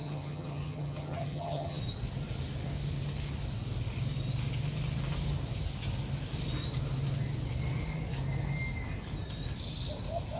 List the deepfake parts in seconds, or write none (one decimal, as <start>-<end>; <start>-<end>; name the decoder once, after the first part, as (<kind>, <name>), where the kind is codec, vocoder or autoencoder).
0.0-1.8 (vocoder, HiFi-GAN)